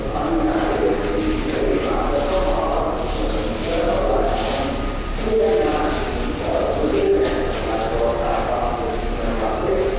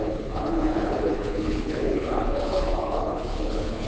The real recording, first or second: first